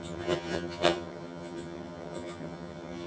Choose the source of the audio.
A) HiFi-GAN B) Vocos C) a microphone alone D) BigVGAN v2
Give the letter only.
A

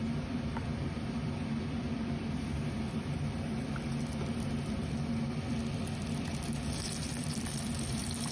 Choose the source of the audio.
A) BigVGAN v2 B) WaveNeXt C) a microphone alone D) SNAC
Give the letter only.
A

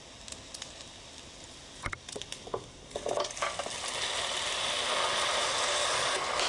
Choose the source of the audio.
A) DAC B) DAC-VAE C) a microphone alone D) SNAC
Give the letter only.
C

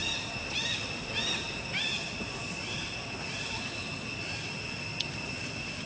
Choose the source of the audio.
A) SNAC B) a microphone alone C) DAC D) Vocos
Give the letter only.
B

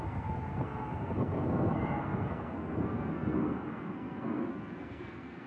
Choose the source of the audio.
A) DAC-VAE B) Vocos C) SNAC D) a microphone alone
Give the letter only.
C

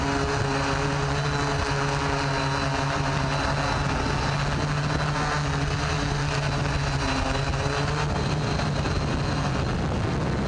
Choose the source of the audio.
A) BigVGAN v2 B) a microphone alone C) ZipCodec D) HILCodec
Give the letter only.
B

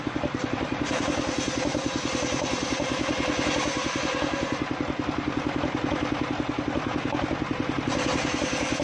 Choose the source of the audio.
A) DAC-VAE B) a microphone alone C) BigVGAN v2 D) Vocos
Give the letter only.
B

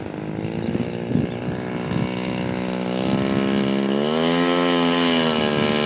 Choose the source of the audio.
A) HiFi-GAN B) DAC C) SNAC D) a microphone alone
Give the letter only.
D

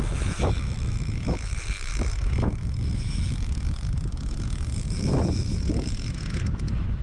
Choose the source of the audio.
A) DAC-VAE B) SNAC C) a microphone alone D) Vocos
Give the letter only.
A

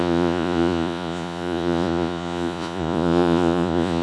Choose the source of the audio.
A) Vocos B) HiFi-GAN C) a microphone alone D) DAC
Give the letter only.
A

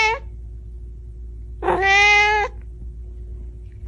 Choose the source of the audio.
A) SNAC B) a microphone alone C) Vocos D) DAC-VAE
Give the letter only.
B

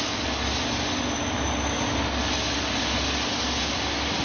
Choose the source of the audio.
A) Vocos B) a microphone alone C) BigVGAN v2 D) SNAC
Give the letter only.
B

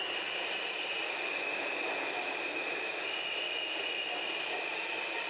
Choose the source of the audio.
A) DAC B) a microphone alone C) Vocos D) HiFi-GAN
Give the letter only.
B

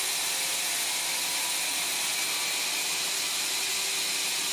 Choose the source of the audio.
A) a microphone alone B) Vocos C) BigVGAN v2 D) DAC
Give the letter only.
A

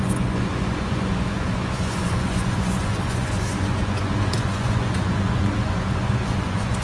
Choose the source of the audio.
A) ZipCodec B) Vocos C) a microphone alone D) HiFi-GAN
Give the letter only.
B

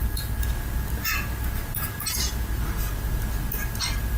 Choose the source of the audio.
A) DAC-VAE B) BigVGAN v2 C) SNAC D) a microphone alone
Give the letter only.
D